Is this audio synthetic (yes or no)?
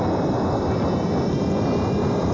no